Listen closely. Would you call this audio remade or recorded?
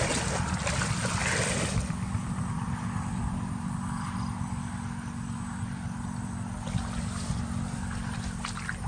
recorded